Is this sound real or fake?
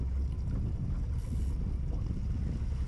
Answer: real